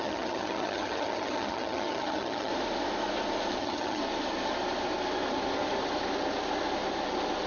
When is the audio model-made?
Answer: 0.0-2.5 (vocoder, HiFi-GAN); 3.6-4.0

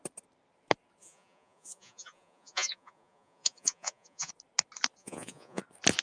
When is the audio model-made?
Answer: 1.0-4.3 (vocoder, Vocos); 5.0-5.6